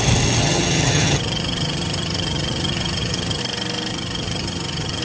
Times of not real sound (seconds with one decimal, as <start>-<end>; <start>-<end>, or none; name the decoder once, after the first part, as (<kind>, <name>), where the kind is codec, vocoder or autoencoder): 0.4-3.4 (vocoder, HiFi-GAN); 3.9-5.0